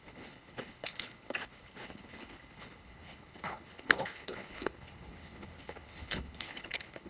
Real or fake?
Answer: fake